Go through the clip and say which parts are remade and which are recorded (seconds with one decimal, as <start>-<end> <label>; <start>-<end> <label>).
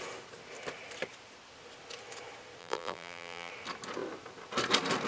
0.0-2.6 recorded; 2.6-3.5 remade; 3.5-5.1 recorded